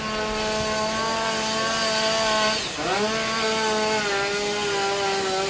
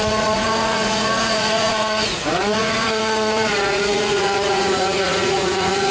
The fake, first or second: second